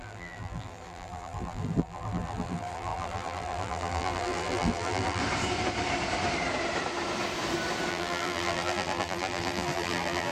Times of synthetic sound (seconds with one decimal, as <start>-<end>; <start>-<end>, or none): 0.0-5.2; 7.9-10.3